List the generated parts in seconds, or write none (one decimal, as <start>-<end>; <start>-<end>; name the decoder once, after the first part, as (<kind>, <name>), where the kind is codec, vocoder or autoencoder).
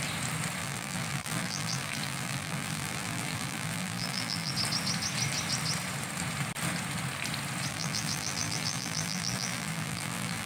0.6-4.5 (vocoder, BigVGAN v2); 7.7-10.5